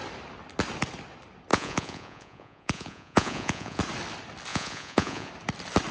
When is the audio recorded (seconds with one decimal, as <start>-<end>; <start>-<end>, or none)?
0.0-1.5; 3.8-4.5; 5.3-5.9